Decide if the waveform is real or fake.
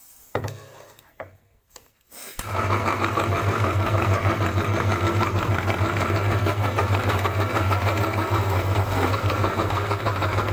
fake